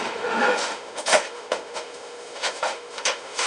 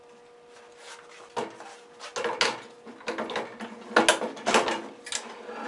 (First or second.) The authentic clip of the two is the second